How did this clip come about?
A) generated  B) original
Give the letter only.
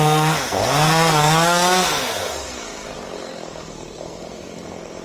A